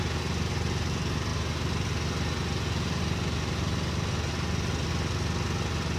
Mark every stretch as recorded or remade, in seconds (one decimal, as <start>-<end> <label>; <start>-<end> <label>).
0.0-6.0 recorded